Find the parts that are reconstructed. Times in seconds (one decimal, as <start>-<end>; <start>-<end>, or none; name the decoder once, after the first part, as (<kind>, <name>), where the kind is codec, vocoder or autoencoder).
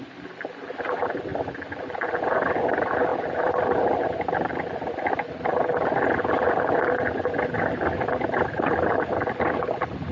none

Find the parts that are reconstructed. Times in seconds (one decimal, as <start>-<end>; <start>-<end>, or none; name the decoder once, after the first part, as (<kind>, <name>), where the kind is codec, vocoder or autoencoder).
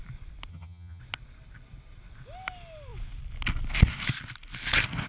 0.5-1.0 (vocoder, HiFi-GAN)